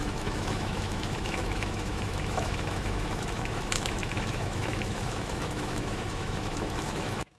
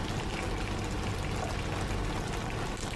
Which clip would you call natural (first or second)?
second